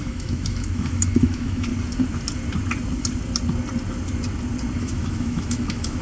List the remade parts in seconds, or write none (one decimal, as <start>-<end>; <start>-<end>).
0.0-1.7; 4.8-6.0